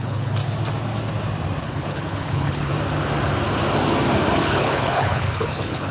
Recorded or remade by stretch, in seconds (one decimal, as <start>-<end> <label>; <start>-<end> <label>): 0.0-0.4 remade; 0.4-1.6 recorded; 1.6-2.7 remade; 2.7-4.3 recorded; 4.3-5.9 remade